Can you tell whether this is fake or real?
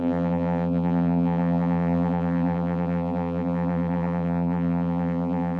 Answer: fake